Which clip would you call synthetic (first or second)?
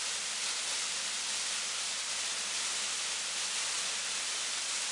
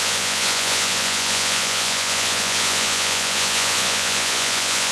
second